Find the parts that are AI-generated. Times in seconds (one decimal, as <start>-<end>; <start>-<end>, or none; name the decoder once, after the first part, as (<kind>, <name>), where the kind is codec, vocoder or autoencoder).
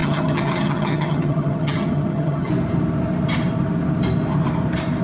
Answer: 0.0-2.5 (vocoder, HiFi-GAN)